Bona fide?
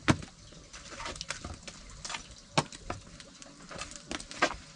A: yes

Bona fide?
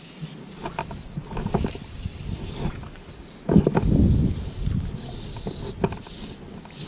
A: yes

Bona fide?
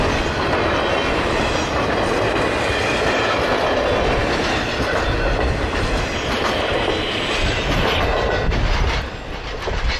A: yes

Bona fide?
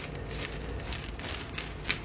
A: yes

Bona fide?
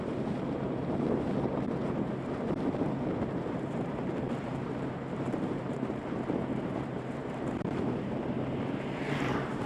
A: no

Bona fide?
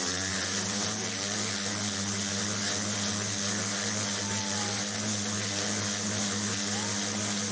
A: yes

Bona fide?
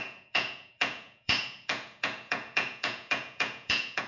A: no